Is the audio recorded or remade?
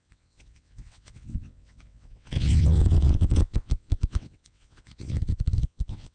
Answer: remade